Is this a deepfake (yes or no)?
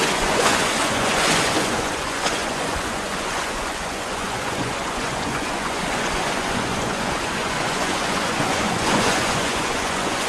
yes